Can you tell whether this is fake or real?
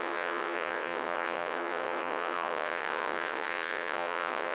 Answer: fake